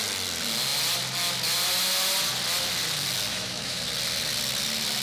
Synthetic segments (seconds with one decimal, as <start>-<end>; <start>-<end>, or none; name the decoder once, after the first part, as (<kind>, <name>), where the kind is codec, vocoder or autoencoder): 3.3-3.8 (autoencoder, DAC-VAE)